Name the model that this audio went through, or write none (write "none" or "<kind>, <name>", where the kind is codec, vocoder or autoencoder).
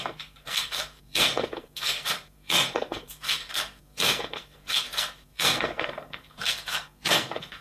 codec, SNAC